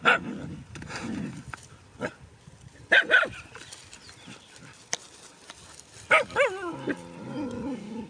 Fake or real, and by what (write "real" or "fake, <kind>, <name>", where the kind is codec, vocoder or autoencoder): real